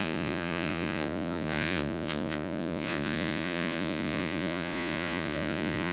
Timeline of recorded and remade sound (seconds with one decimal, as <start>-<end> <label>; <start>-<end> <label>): 0.0-5.9 remade